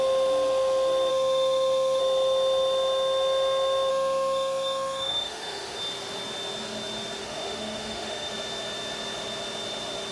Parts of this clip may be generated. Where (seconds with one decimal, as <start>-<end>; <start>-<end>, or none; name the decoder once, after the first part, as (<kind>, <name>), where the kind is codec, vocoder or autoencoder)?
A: 1.1-2.0 (autoencoder, DAC-VAE); 3.9-5.8; 7.2-8.3